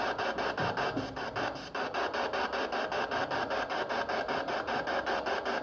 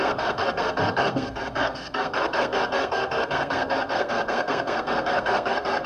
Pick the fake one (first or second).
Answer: second